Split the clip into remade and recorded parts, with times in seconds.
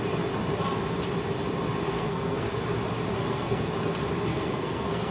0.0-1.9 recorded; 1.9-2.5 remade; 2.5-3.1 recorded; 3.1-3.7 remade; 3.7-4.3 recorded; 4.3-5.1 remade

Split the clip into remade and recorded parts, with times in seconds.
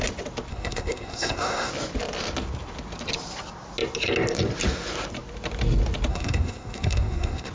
0.0-0.5 recorded; 0.5-1.7 remade; 1.7-6.1 recorded; 6.1-7.5 remade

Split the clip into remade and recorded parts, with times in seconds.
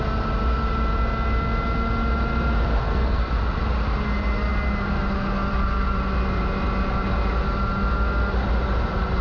0.0-2.8 recorded; 2.8-3.3 remade; 3.3-9.2 recorded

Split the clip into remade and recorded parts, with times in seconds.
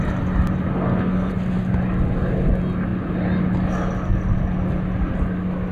0.0-0.7 recorded; 0.7-1.3 remade; 1.3-5.7 recorded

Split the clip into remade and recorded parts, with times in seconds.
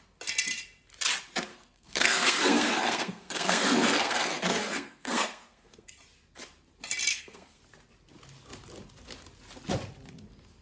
0.0-1.5 recorded; 1.5-5.9 remade; 5.9-7.1 recorded; 7.1-7.6 remade; 7.6-10.6 recorded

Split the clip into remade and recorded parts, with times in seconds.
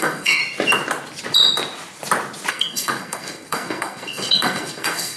0.0-0.4 remade; 0.4-2.5 recorded; 2.5-5.2 remade